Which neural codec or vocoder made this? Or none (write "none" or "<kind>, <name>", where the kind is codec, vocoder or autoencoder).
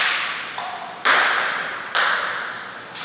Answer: none